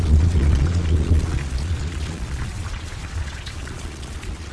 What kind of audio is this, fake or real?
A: fake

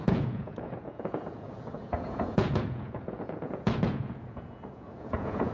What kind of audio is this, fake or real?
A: fake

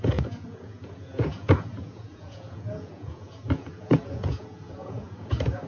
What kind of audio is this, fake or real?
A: fake